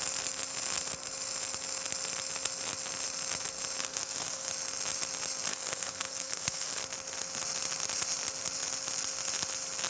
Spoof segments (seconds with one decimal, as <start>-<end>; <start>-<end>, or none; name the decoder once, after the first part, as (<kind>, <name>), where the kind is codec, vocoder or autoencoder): 3.8-4.5 (codec, SNAC); 5.5-6.8